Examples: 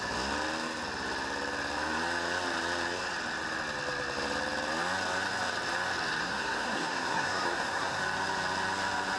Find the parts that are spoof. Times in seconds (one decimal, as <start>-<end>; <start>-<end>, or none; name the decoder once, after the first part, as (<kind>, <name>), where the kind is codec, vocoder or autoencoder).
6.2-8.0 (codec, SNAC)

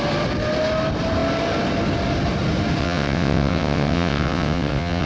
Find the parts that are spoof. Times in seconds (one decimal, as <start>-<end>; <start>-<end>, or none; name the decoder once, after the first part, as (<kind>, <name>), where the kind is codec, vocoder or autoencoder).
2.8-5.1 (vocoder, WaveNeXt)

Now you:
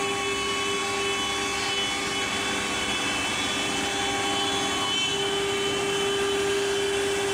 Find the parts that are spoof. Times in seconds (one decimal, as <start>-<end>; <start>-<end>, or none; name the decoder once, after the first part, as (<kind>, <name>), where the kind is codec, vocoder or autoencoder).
none